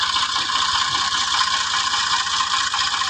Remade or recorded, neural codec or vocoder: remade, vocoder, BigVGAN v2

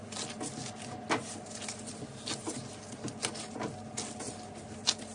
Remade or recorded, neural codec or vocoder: recorded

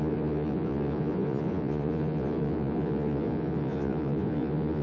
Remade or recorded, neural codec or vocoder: remade, vocoder, Vocos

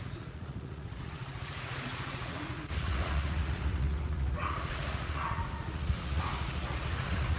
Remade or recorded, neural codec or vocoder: remade, vocoder, Vocos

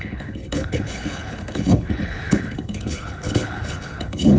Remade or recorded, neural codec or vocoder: remade, codec, HILCodec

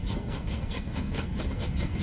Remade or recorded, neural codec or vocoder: remade, codec, SNAC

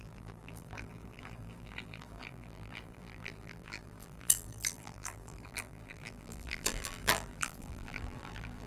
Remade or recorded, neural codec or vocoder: remade, vocoder, BigVGAN v2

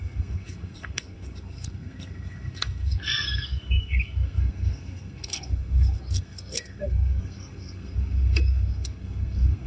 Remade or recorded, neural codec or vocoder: remade, codec, SNAC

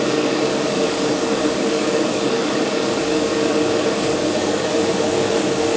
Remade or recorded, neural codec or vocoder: remade, codec, DAC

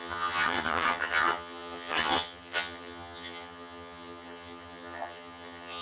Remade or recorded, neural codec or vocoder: remade, vocoder, HiFi-GAN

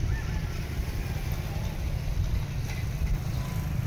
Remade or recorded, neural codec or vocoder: recorded